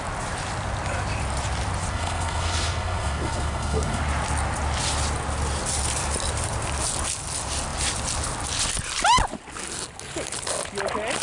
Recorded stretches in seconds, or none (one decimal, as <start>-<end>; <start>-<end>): 0.0-1.9; 4.0-11.2